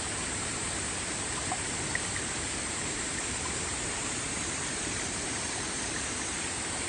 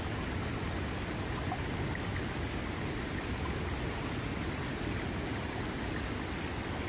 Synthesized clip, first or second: first